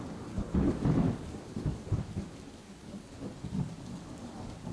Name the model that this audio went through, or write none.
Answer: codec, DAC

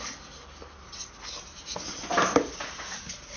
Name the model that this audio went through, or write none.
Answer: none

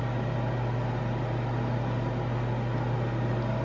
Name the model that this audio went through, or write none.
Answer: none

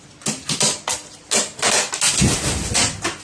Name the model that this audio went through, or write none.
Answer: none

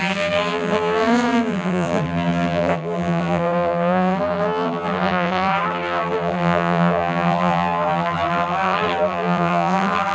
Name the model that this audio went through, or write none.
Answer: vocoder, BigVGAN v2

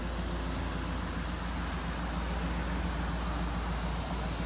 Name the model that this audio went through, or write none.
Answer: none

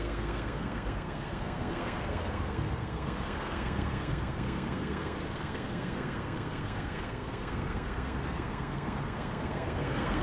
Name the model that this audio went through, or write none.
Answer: codec, SNAC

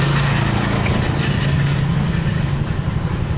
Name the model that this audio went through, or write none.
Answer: none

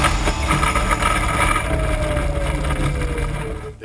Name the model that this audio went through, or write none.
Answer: none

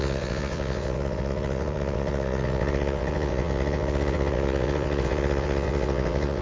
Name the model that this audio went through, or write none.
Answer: vocoder, WaveNeXt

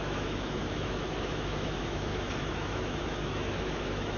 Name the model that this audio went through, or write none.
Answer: autoencoder, DAC-VAE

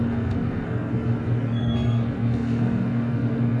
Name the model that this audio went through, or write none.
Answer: codec, SNAC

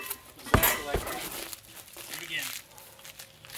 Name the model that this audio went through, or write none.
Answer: none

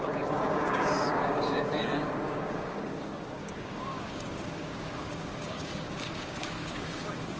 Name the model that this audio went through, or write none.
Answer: codec, DAC